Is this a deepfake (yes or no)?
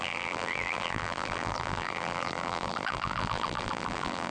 yes